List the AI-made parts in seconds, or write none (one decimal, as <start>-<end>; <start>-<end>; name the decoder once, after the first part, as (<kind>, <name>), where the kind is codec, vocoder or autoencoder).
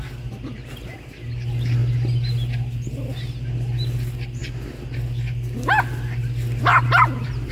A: none